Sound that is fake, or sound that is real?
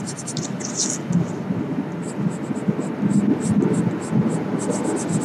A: real